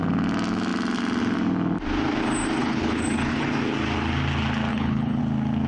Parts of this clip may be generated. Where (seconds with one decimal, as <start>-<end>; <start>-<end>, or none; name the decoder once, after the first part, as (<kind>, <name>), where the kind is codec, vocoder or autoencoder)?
2.6-3.5 (codec, HILCodec); 4.7-5.2